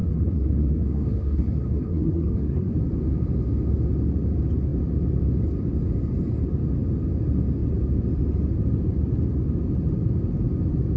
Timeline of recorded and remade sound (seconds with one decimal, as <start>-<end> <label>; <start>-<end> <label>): 0.0-2.7 remade; 2.7-11.0 recorded